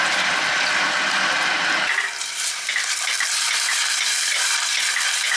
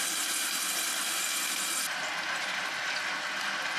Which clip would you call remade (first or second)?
first